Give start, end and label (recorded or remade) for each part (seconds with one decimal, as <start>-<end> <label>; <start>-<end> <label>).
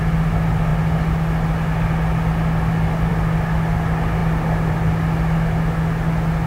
0.0-6.5 recorded